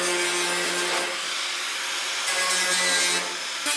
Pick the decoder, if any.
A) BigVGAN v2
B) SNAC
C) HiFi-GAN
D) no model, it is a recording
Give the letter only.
D